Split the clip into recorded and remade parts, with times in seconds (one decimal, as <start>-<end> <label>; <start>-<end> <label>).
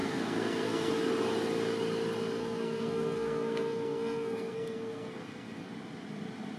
0.0-0.9 remade; 0.9-2.4 recorded; 2.4-5.7 remade; 5.7-6.6 recorded